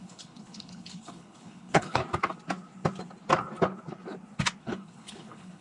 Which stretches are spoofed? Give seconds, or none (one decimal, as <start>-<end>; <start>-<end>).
0.0-2.0; 4.6-5.6